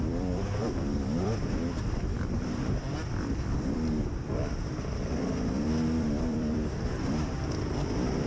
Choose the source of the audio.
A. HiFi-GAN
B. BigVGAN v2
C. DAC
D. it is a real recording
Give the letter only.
B